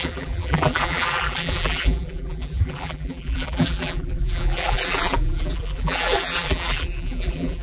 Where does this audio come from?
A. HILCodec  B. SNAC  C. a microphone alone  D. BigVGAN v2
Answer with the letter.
D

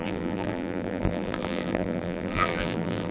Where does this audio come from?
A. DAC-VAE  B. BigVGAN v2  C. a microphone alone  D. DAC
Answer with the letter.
B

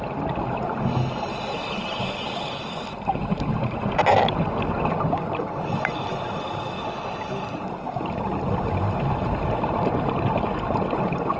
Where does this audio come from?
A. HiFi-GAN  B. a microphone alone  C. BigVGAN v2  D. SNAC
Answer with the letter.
B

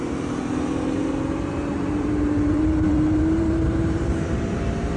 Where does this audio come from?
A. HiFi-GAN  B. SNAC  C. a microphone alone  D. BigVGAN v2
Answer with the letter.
D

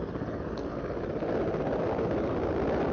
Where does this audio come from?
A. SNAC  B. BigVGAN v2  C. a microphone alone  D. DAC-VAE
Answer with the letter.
C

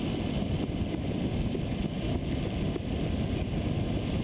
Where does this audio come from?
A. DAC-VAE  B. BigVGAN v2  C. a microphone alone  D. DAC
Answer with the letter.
C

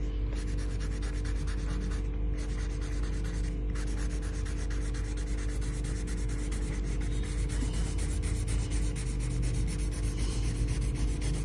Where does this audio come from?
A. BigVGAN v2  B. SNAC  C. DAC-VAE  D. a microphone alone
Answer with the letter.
D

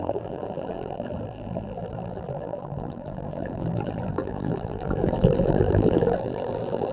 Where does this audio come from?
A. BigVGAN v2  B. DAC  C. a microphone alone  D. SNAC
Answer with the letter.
A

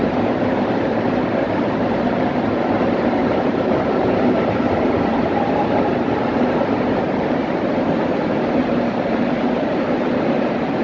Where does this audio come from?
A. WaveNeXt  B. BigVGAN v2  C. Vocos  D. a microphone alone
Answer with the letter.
B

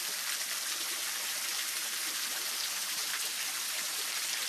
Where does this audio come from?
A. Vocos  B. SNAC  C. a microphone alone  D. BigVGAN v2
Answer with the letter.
D